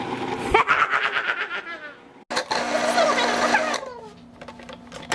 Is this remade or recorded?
recorded